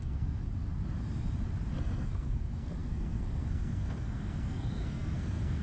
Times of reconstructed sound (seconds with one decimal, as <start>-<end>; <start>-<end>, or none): 0.0-0.4; 1.8-5.6

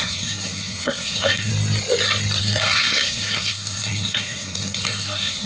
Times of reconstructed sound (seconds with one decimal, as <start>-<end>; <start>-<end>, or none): 0.0-1.5; 2.4-5.5

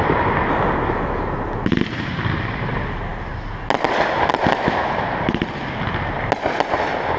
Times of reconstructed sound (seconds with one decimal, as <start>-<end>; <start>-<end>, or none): none

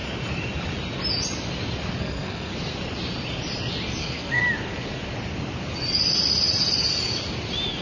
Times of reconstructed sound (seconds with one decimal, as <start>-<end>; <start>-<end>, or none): 2.0-2.5; 4.0-4.4